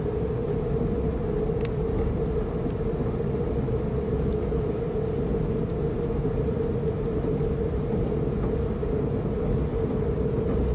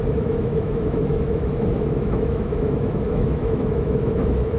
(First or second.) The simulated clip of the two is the second